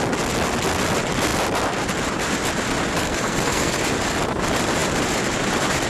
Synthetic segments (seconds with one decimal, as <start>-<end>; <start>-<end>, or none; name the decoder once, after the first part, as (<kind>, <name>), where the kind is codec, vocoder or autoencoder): 3.0-3.8 (codec, SNAC)